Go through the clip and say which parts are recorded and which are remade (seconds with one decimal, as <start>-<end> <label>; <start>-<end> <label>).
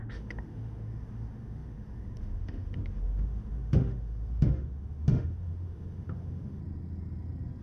0.0-6.6 remade; 6.6-7.6 recorded